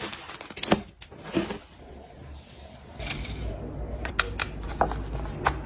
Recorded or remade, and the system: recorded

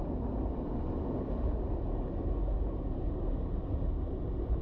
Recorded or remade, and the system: recorded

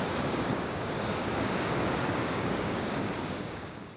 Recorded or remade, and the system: remade, codec, DAC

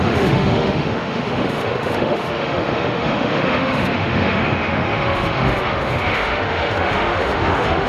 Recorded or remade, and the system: remade, autoencoder, DAC-VAE